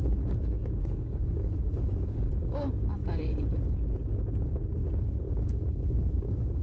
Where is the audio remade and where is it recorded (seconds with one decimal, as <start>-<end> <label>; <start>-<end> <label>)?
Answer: 0.0-2.3 remade; 2.3-4.3 recorded; 4.3-4.8 remade; 4.8-5.3 recorded; 5.3-6.6 remade